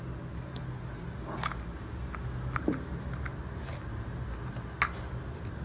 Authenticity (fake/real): real